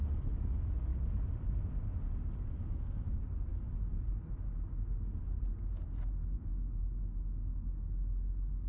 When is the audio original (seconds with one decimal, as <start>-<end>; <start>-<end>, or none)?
0.0-0.9; 1.7-3.5; 4.2-8.7